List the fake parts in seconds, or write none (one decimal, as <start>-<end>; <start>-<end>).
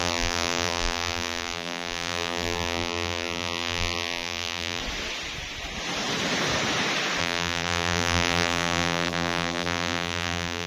0.0-4.8; 7.2-10.7